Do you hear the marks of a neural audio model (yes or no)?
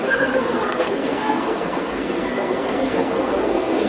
yes